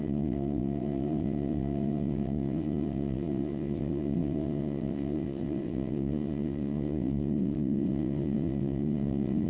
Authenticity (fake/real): fake